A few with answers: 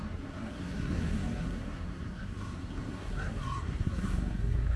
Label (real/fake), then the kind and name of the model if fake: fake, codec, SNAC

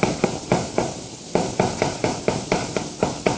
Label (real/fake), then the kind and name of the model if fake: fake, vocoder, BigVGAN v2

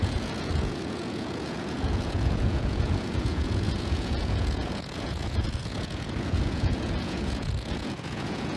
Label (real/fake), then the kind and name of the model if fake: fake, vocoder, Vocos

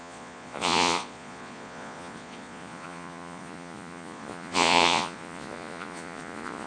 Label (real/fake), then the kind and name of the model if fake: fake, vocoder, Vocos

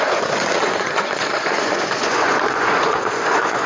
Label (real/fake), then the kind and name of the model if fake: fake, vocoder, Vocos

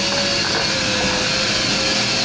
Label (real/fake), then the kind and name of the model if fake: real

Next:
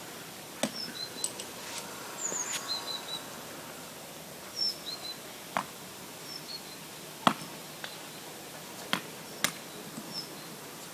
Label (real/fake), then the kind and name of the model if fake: real